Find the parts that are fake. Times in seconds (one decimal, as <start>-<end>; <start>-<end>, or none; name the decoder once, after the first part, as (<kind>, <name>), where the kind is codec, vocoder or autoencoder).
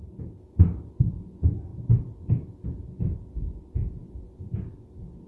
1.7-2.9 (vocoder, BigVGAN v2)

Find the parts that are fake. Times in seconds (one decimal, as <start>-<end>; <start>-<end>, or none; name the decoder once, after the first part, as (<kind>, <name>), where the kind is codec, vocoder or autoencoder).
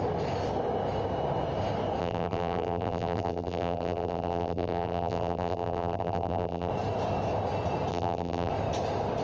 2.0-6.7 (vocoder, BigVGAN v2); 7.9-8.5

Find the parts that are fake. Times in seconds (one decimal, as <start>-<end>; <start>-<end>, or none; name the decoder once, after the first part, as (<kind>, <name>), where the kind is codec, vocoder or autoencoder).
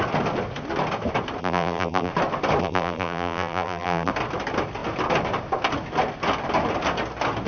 1.4-2.1 (vocoder, BigVGAN v2); 2.6-4.1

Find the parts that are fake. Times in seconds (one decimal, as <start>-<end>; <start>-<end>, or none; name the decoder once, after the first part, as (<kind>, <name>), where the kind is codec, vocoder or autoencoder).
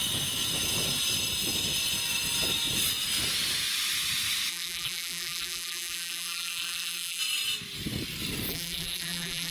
4.5-7.2 (vocoder, BigVGAN v2); 8.5-9.5